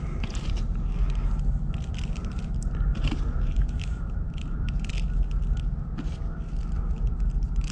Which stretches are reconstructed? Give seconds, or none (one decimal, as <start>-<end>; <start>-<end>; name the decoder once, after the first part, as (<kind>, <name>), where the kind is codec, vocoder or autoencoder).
2.9-4.9 (vocoder, BigVGAN v2)